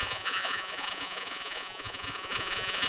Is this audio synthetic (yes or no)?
yes